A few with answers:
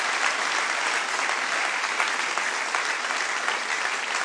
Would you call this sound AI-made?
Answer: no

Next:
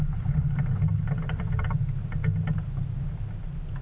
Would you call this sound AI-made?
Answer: no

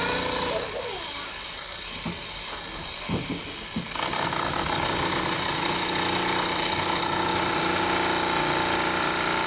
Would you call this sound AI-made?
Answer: no